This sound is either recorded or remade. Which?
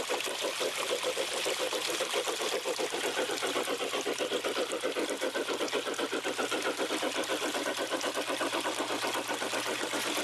recorded